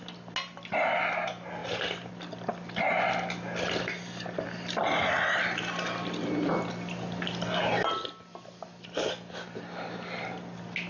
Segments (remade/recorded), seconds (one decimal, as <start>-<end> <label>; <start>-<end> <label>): 0.0-10.9 recorded